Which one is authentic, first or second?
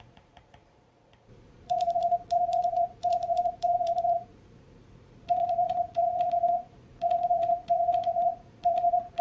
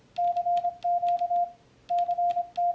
second